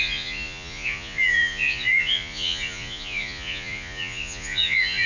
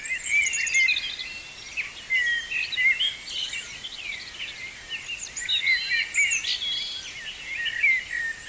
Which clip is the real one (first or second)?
second